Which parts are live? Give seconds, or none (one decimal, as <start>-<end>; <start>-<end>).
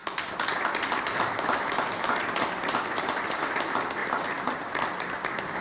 0.0-5.6